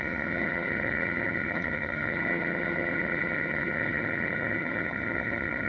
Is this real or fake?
fake